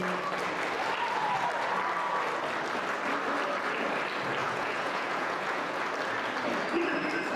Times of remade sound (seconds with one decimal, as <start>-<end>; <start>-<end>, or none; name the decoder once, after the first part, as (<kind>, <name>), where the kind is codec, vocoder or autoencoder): 4.4-5.8 (vocoder, Vocos)

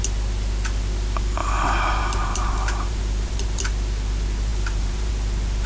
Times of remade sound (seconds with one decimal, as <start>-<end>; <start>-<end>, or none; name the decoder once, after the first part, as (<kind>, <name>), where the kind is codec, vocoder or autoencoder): 1.4-3.6 (vocoder, BigVGAN v2); 4.5-5.1

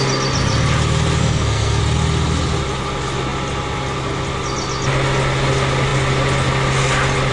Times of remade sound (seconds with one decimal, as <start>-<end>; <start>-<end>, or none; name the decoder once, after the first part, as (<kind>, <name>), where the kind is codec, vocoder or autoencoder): 1.2-1.8 (codec, SNAC)

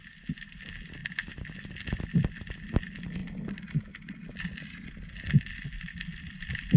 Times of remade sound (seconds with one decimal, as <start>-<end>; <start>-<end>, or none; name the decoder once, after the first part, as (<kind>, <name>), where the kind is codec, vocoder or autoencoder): none